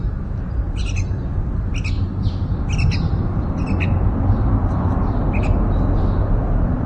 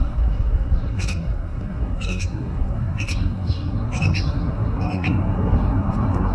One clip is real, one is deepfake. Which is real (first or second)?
first